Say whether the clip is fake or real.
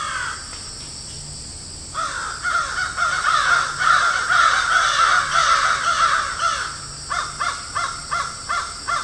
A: real